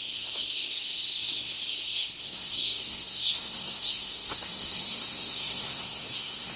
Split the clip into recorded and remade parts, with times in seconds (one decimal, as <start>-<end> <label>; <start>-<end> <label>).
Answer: 0.0-6.6 remade